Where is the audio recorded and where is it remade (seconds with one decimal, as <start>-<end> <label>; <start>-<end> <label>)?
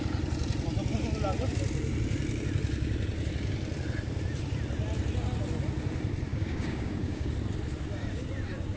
0.0-6.3 recorded; 6.3-7.3 remade; 7.3-8.8 recorded